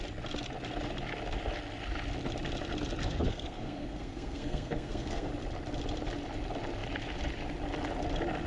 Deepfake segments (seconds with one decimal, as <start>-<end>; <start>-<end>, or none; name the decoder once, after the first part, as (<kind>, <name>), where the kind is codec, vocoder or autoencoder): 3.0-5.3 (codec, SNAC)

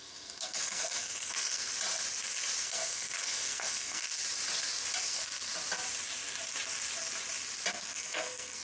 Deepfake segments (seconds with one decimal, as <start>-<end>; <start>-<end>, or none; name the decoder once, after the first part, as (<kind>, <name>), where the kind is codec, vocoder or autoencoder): 0.0-1.7 (codec, SNAC); 2.6-4.2; 5.0-5.5; 7.7-8.6

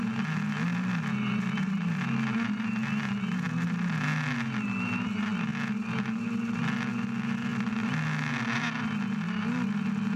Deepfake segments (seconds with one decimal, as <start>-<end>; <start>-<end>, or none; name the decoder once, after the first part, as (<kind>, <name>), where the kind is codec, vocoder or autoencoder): none

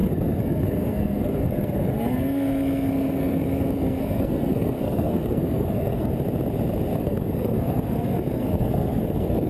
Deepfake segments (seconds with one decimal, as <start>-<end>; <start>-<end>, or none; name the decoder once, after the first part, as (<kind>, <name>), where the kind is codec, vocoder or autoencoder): 0.0-6.1 (codec, SNAC); 7.0-9.5

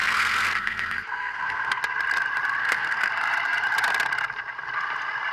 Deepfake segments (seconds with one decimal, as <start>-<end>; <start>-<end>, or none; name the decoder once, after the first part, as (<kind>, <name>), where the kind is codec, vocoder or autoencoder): 0.0-1.8 (codec, SNAC); 2.6-3.1

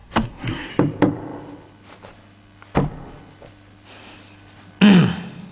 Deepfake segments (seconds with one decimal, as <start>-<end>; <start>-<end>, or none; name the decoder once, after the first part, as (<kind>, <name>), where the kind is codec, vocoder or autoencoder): 0.0-0.7 (codec, SNAC)

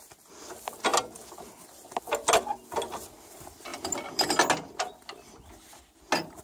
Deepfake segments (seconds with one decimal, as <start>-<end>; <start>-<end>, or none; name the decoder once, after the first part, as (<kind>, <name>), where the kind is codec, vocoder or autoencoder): none

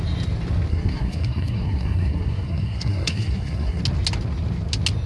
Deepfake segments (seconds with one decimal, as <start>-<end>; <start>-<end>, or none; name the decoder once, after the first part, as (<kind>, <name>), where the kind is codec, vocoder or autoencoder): 0.7-3.8 (codec, SNAC)